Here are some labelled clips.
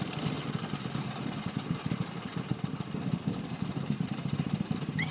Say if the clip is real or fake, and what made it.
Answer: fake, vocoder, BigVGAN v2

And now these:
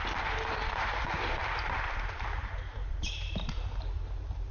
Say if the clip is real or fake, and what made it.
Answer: fake, vocoder, BigVGAN v2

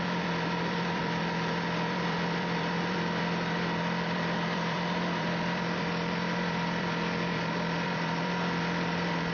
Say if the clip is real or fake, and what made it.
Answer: fake, vocoder, BigVGAN v2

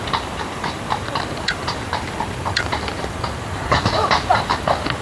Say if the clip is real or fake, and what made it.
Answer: fake, vocoder, BigVGAN v2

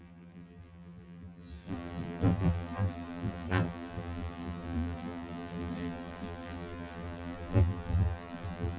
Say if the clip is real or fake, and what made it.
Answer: fake, vocoder, BigVGAN v2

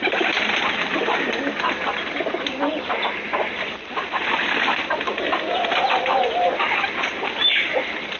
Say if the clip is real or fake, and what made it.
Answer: fake, vocoder, BigVGAN v2